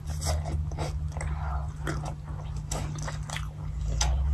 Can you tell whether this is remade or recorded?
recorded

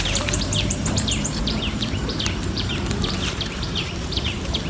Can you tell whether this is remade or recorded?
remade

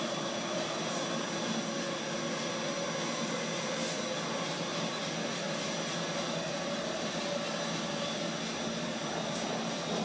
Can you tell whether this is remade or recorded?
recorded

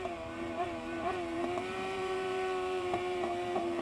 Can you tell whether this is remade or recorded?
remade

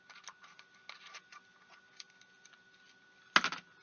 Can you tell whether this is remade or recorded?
recorded